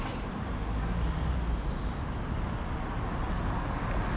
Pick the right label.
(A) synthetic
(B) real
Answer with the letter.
B